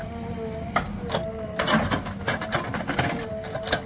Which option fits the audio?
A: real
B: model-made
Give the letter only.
A